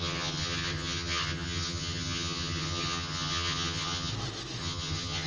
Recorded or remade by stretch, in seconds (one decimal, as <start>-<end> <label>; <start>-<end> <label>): 0.0-4.1 remade; 4.1-4.6 recorded; 4.6-5.3 remade